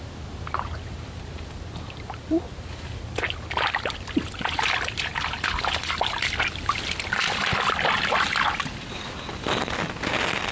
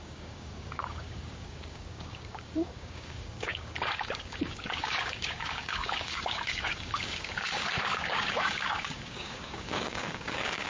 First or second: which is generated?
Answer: second